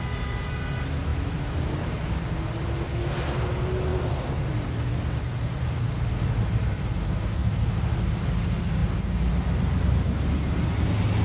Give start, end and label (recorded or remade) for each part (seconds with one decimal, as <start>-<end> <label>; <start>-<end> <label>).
0.0-11.2 recorded